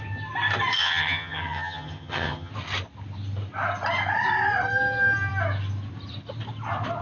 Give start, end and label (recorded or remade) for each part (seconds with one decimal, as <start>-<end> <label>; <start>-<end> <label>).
0.0-0.8 recorded; 0.8-2.5 remade; 2.5-7.0 recorded